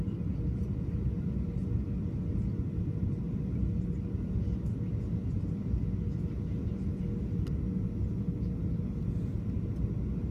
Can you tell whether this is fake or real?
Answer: real